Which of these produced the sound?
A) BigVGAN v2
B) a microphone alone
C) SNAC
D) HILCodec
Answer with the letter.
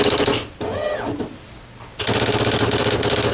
B